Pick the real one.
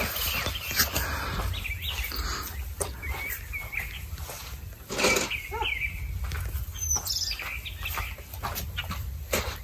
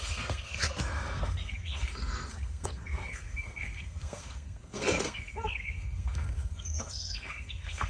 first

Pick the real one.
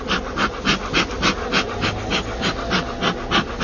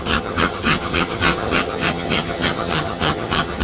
first